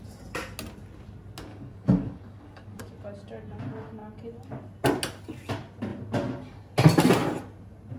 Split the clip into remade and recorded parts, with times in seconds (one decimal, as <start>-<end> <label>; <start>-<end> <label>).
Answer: 0.0-1.5 recorded; 1.5-2.8 remade; 2.8-8.0 recorded